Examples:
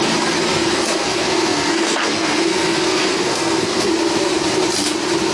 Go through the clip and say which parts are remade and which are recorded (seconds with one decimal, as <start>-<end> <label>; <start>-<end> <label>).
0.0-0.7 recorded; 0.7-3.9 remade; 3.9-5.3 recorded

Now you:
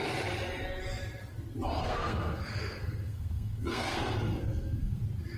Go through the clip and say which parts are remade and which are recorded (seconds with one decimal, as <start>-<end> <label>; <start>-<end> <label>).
0.0-1.8 recorded; 1.8-5.0 remade; 5.0-5.4 recorded

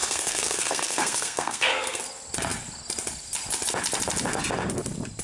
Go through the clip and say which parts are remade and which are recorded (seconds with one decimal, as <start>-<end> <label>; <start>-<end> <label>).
0.0-2.0 remade; 2.0-5.2 recorded

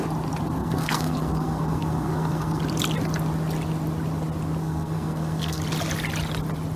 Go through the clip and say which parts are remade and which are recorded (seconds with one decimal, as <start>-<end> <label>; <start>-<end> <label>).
0.0-0.6 recorded; 0.6-2.6 remade; 2.6-4.6 recorded; 4.6-5.6 remade; 5.6-6.8 recorded

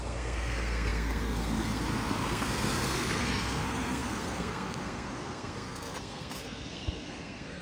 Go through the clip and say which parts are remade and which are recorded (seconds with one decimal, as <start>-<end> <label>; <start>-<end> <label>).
0.0-7.6 remade

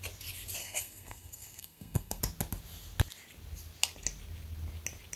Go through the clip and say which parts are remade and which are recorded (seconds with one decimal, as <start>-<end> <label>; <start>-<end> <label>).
0.0-0.6 recorded; 0.6-2.2 remade; 2.2-5.2 recorded

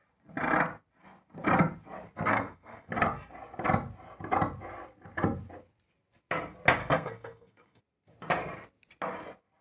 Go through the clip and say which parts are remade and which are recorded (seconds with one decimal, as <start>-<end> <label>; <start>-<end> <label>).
0.0-2.3 recorded; 2.3-2.9 remade; 2.9-6.8 recorded; 6.8-7.8 remade; 7.8-9.6 recorded

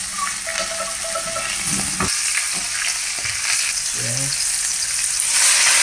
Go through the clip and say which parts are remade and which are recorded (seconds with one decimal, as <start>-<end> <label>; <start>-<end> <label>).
0.0-5.8 recorded